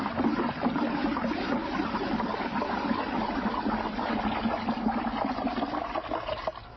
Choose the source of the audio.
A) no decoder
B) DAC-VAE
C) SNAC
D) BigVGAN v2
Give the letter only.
A